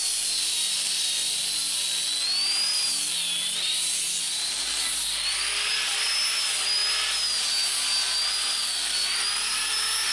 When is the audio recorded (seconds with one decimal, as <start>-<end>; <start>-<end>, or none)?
1.6-4.2; 6.8-8.3